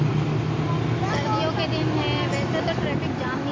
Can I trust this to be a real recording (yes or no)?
yes